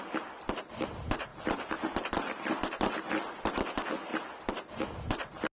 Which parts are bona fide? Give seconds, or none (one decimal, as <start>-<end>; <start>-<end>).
0.0-5.6